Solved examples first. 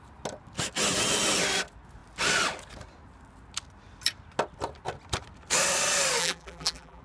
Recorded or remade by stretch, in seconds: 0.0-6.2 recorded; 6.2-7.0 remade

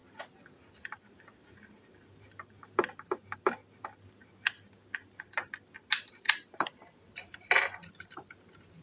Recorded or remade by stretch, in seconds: 0.0-0.8 recorded; 0.8-3.6 remade; 3.6-6.0 recorded; 6.0-8.8 remade

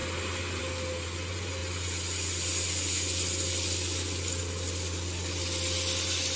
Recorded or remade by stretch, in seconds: 0.0-6.4 recorded

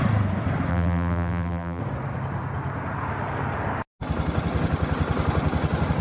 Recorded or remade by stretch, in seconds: 0.0-0.7 recorded; 0.7-1.8 remade; 1.8-6.0 recorded

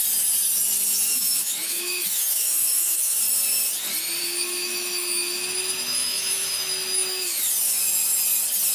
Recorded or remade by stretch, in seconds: 0.0-1.1 recorded; 1.1-3.2 remade; 3.2-4.2 recorded; 4.2-7.4 remade; 7.4-8.7 recorded

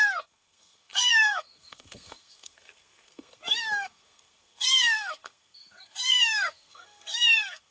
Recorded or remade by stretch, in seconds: 0.0-7.7 remade

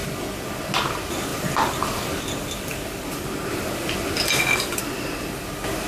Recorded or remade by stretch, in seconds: 0.0-5.9 recorded